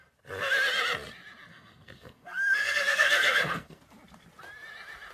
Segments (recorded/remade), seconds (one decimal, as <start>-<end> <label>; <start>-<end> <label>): 0.0-1.5 recorded; 1.5-3.8 remade; 3.8-5.1 recorded